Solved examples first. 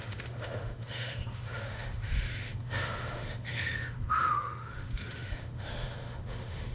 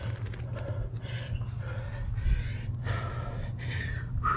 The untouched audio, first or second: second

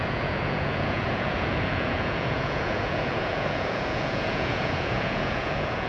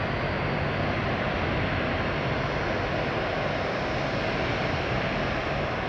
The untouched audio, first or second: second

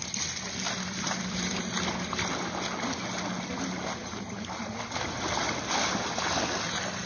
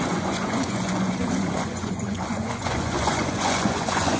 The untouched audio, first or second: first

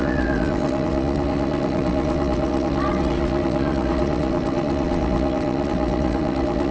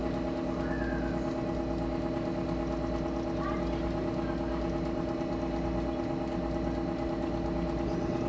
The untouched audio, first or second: second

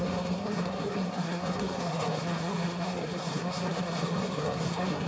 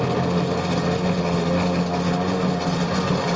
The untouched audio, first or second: second